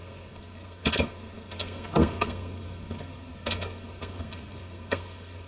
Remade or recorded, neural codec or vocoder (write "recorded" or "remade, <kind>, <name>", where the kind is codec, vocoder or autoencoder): remade, codec, SNAC